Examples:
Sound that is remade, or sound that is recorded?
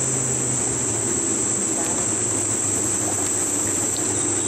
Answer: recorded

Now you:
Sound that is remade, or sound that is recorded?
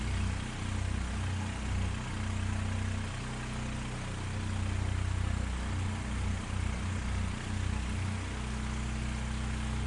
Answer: recorded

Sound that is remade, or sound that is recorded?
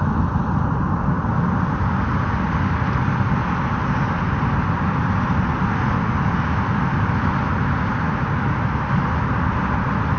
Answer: recorded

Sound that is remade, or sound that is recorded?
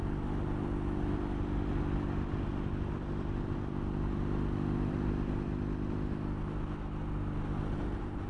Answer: recorded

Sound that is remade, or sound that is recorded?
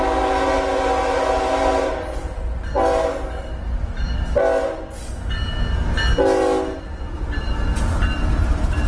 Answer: recorded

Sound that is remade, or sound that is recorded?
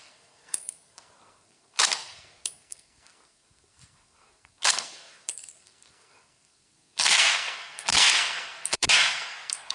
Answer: remade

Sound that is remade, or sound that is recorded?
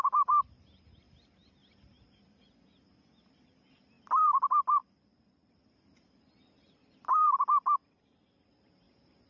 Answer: recorded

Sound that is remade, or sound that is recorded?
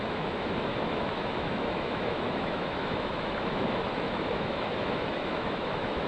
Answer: remade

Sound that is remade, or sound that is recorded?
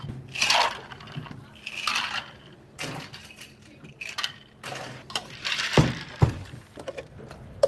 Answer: recorded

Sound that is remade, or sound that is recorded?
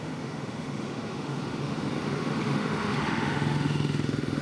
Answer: remade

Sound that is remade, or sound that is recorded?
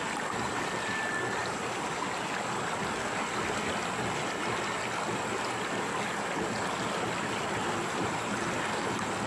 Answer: recorded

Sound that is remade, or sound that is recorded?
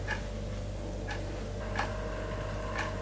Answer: recorded